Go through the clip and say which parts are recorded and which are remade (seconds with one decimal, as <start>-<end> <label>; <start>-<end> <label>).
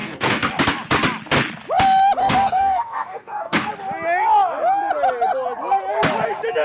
0.0-0.5 remade; 0.5-2.2 recorded; 2.2-3.7 remade; 3.7-6.6 recorded